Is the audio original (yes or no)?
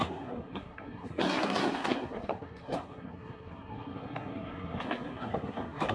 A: no